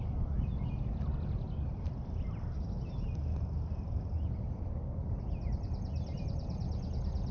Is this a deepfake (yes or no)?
no